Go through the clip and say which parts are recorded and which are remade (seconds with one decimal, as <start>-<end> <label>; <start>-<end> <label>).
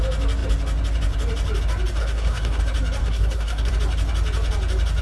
0.0-2.0 recorded; 2.0-2.6 remade; 2.6-3.0 recorded; 3.0-3.7 remade; 3.7-5.0 recorded